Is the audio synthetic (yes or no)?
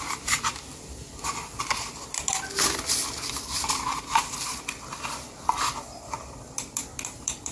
yes